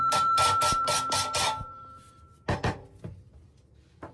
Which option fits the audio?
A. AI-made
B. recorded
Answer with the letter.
B